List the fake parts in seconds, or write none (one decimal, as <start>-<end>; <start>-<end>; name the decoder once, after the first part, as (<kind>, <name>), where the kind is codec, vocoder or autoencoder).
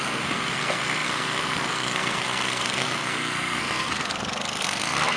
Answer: 0.0-5.2 (codec, SNAC)